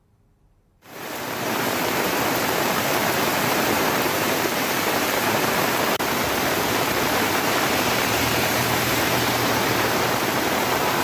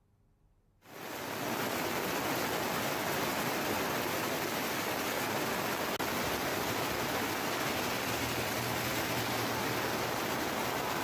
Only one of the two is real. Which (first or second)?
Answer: second